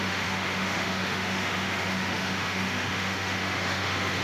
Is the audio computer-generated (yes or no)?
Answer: yes